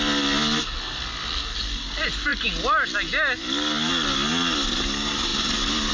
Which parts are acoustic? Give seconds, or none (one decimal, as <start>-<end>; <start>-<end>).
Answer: 0.0-5.9